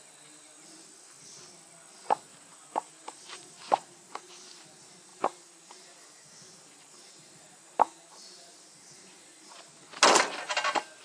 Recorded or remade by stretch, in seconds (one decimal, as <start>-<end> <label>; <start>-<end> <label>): 0.0-2.3 recorded; 2.3-4.3 remade; 4.3-5.1 recorded; 5.1-9.7 remade; 9.7-11.0 recorded